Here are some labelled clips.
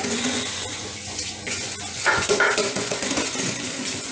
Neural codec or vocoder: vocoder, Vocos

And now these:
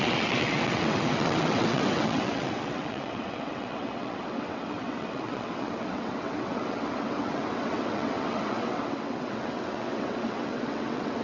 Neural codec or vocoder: vocoder, WaveNeXt